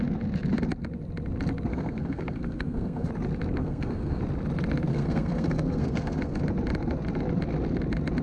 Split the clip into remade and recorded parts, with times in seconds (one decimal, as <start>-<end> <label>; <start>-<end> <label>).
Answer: 0.0-1.7 recorded; 1.7-3.1 remade; 3.1-3.6 recorded; 3.6-4.2 remade; 4.2-4.9 recorded; 4.9-6.4 remade; 6.4-8.2 recorded